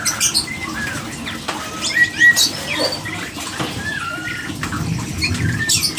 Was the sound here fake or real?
real